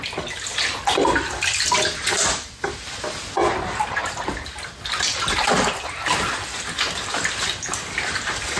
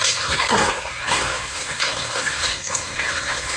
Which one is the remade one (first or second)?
second